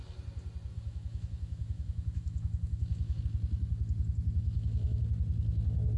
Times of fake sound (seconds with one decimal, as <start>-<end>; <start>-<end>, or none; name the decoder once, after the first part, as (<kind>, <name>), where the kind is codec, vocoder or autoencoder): 0.7-3.2 (autoencoder, DAC-VAE); 4.4-5.0